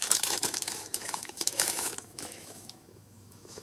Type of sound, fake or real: fake